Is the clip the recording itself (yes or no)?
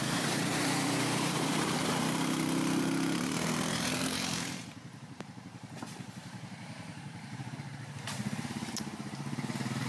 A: no